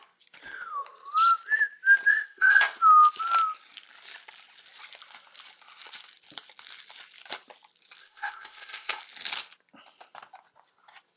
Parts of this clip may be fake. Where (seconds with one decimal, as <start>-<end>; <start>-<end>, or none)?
2.1-2.6; 8.0-9.0